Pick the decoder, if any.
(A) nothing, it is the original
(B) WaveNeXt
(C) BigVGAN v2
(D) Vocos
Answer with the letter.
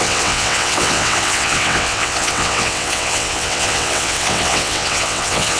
B